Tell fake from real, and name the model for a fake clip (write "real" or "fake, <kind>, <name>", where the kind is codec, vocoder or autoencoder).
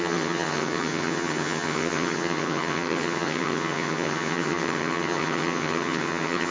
fake, vocoder, HiFi-GAN